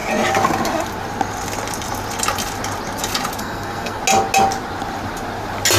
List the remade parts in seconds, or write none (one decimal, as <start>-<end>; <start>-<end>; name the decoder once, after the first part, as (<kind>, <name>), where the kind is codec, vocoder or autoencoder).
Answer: 3.4-4.0 (codec, SNAC)